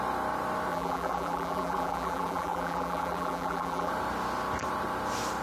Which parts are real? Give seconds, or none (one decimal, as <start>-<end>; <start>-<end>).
0.0-0.7; 3.9-5.4